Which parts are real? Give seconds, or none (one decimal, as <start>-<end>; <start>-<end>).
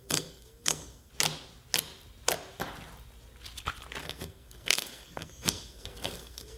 1.1-4.0